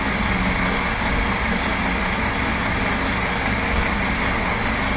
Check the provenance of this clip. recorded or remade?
recorded